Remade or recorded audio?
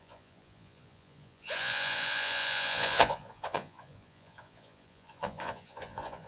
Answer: remade